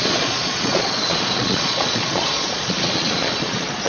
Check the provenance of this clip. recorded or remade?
remade